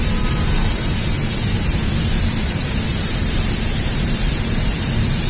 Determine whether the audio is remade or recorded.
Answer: remade